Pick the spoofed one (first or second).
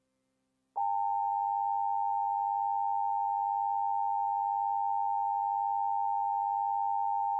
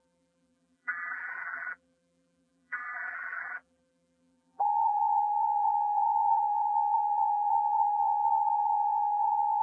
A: second